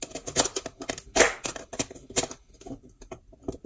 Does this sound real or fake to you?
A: real